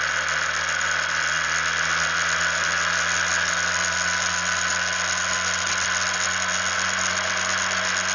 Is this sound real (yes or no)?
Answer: yes